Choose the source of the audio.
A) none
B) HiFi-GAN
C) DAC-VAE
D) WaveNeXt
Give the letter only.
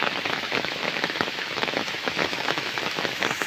C